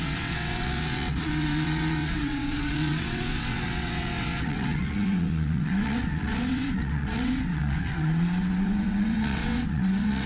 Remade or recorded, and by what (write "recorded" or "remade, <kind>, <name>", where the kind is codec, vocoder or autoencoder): remade, vocoder, WaveNeXt